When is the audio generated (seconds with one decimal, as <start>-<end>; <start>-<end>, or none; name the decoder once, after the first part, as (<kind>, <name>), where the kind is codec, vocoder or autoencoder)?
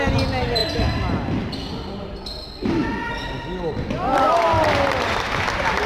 none